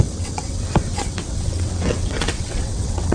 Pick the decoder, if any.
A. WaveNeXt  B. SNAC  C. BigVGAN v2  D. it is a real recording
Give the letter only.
A